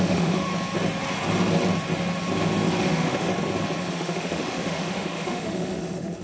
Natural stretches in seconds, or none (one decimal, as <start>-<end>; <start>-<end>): 0.5-2.8; 3.3-3.9